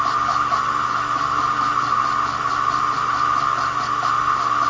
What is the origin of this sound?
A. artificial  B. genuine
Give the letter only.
B